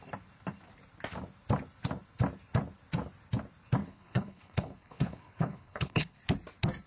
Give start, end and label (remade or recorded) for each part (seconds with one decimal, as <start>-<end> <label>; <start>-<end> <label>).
0.0-3.8 recorded; 3.8-6.2 remade; 6.2-6.9 recorded